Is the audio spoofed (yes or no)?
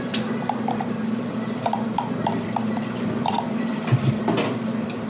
yes